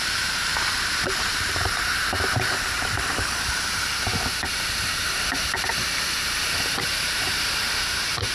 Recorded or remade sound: remade